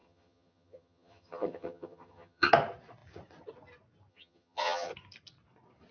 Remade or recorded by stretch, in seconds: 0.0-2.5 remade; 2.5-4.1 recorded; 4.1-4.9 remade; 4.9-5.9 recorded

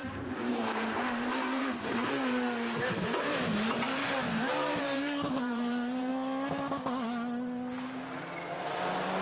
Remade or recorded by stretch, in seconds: 0.0-6.1 remade; 6.1-9.2 recorded

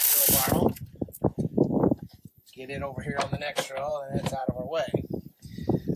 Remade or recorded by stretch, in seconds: 0.0-6.0 recorded

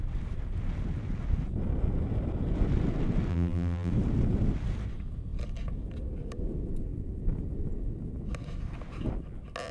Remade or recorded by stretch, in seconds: 0.0-3.3 recorded; 3.3-3.9 remade; 3.9-9.7 recorded

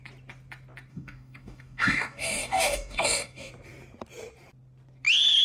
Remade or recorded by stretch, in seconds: 0.0-0.9 recorded; 0.9-3.5 remade; 3.5-5.4 recorded